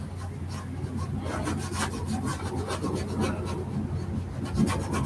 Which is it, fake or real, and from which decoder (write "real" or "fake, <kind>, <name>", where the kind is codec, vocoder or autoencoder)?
real